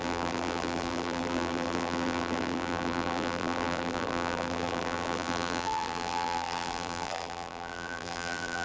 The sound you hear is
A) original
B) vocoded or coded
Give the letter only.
B